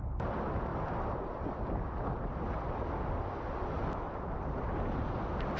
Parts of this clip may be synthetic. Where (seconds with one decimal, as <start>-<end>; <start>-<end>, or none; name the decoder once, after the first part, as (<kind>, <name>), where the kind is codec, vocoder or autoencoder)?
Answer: none